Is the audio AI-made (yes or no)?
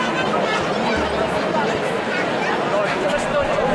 no